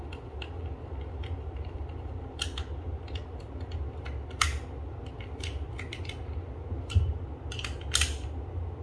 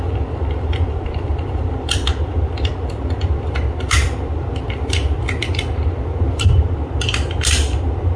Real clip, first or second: first